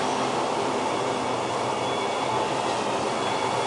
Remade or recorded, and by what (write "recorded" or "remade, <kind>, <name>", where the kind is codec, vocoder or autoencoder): recorded